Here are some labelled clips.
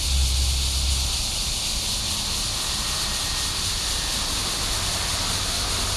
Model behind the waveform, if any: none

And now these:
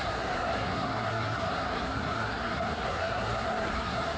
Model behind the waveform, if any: codec, SNAC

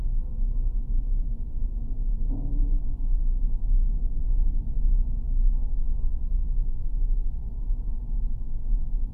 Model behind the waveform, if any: none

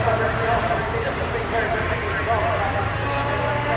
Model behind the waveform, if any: none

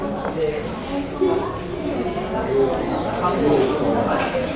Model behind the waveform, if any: none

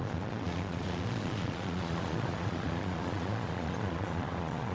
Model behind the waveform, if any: vocoder, Vocos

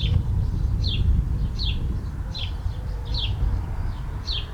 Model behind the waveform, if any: none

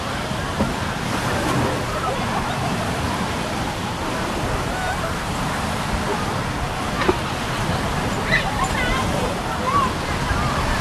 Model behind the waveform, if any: none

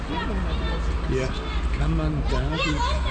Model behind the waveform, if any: none